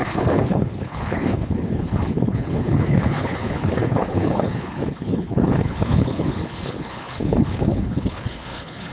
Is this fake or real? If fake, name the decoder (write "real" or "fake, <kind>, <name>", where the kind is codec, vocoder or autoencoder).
fake, codec, HILCodec